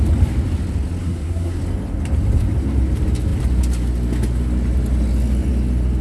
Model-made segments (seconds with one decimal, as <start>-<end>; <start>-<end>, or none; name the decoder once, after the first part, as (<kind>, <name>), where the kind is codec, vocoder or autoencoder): 1.0-1.6 (codec, SNAC)